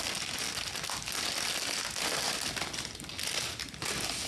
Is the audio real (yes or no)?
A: yes